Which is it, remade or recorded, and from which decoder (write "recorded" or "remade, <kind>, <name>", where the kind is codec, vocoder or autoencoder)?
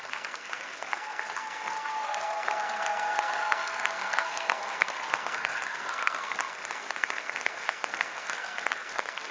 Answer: remade, codec, SNAC